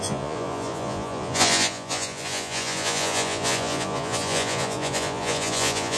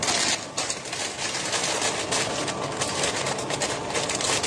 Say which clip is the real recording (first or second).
second